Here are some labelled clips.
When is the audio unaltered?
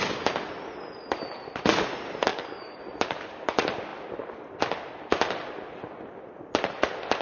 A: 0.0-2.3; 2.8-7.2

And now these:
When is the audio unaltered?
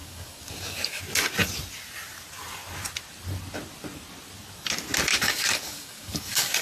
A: 1.0-5.1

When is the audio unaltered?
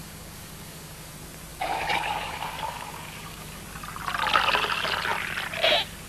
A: 1.1-1.5; 3.6-6.1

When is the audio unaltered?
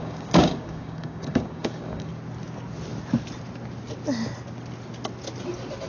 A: 2.1-5.9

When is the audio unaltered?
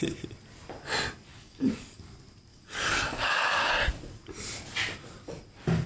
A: 0.0-1.3; 2.1-2.5; 3.7-5.9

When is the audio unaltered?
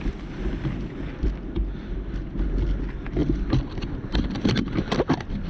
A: 0.0-5.5